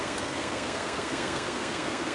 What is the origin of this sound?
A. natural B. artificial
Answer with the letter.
B